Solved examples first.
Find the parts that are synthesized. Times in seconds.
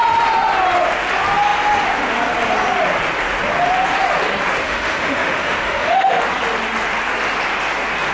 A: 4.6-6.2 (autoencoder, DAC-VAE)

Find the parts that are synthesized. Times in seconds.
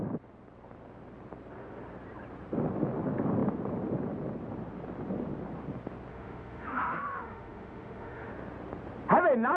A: 6.1-8.3 (autoencoder, DAC-VAE)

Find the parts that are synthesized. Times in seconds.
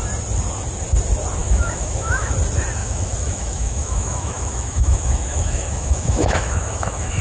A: 1.4-2.3 (autoencoder, DAC-VAE); 2.8-7.2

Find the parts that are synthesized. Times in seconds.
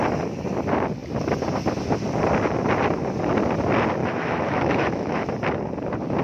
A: 4.0-5.4 (autoencoder, DAC-VAE)